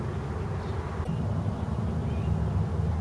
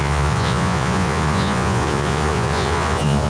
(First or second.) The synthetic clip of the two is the second